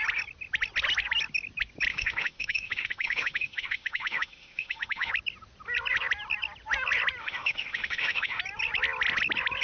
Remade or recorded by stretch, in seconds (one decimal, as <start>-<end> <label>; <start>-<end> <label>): 0.0-1.9 recorded; 1.9-5.1 remade; 5.1-7.2 recorded; 7.2-8.4 remade; 8.4-9.6 recorded

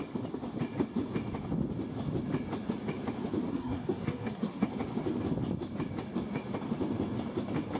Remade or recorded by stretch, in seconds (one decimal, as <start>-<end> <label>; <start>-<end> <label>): 0.0-3.5 recorded; 3.5-4.7 remade; 4.7-7.8 recorded